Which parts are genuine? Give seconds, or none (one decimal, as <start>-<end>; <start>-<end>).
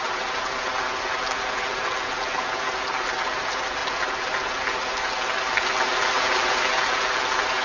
0.0-7.6